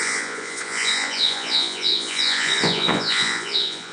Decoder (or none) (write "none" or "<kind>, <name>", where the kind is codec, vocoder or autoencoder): vocoder, Vocos